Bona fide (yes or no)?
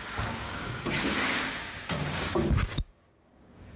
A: no